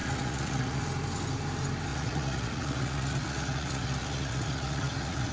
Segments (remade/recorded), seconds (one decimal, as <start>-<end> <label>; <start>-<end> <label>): 0.0-0.8 remade; 0.8-1.9 recorded; 1.9-5.3 remade